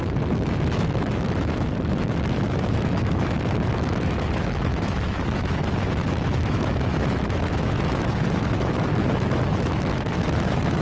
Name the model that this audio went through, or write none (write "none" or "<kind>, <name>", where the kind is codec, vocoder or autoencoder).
autoencoder, DAC-VAE